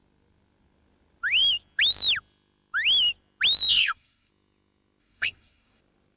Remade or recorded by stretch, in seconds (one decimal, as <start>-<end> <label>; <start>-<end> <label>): 0.0-3.7 recorded; 3.7-4.3 remade; 4.3-5.0 recorded; 5.0-5.8 remade; 5.8-6.2 recorded